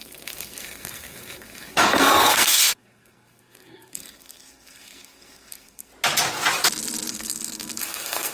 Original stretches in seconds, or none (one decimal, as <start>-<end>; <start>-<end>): 5.9-7.1